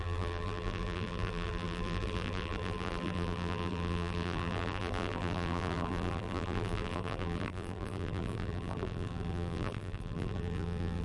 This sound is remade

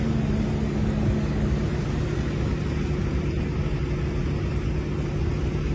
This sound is recorded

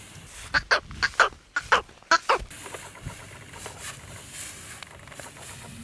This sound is recorded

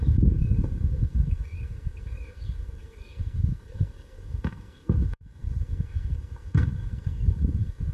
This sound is remade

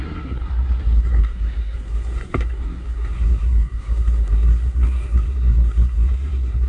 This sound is remade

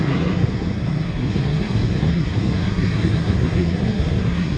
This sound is remade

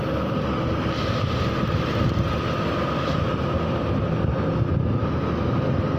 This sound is recorded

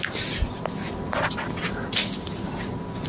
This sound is recorded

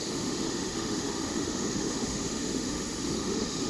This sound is remade